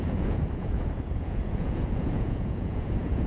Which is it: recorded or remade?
remade